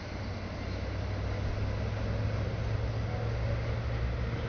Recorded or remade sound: recorded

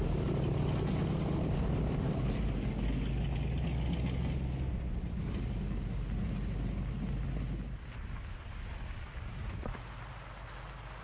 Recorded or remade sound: recorded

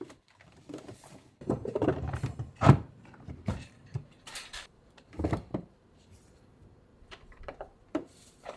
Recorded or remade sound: remade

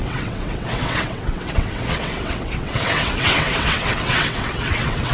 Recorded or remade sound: remade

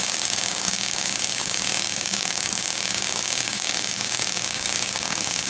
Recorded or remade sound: remade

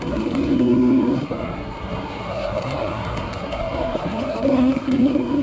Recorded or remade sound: remade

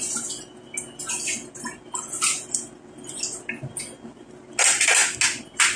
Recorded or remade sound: recorded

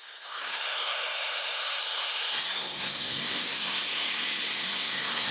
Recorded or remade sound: remade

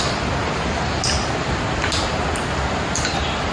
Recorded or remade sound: recorded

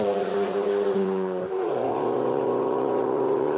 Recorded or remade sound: remade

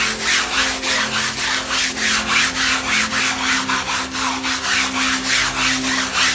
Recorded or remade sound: recorded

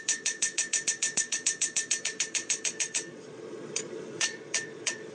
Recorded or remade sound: remade